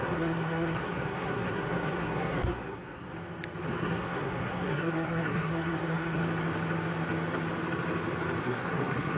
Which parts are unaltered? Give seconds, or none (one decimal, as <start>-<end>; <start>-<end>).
3.1-3.8; 6.2-8.4